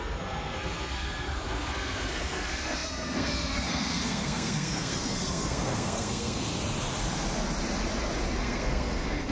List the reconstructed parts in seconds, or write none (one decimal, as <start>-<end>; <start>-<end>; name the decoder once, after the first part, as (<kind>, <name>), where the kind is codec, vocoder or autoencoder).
0.0-6.5 (codec, SNAC); 8.4-9.3